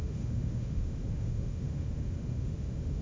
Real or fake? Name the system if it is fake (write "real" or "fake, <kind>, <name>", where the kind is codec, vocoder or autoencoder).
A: fake, autoencoder, DAC-VAE